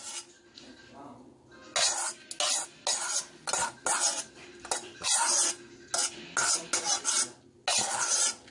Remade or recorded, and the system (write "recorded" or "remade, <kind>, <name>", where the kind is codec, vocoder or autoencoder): recorded